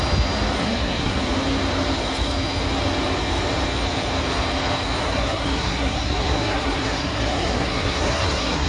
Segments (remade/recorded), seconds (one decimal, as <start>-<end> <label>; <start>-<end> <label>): 0.0-0.6 recorded; 0.6-1.2 remade; 1.2-5.0 recorded; 5.0-8.7 remade